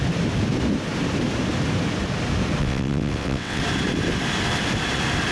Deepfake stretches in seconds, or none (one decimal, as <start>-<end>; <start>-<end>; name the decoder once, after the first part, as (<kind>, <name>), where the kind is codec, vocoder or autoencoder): 2.6-3.6 (vocoder, WaveNeXt)